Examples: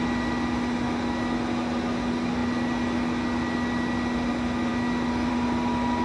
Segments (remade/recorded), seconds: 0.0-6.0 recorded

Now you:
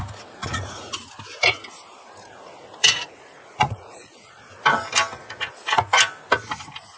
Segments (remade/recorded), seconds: 0.0-0.4 recorded; 0.4-0.9 remade; 0.9-2.8 recorded; 2.8-4.5 remade; 4.5-7.0 recorded

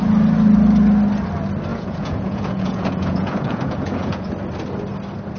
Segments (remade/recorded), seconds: 0.0-1.7 recorded; 1.7-4.3 remade; 4.3-5.4 recorded

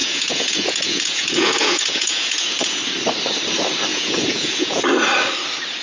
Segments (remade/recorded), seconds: 0.0-2.8 remade; 2.8-3.9 recorded; 3.9-4.8 remade; 4.8-5.8 recorded